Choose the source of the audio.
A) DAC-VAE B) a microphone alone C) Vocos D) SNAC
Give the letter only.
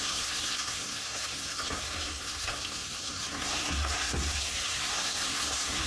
D